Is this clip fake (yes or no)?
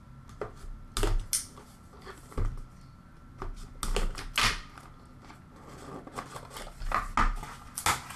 no